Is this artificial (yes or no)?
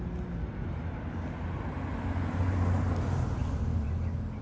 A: no